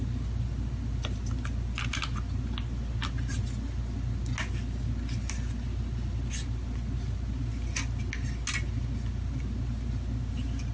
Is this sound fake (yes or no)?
no